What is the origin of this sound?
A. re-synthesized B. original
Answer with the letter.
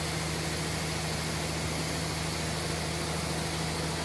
B